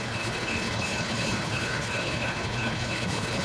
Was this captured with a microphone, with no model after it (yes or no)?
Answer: no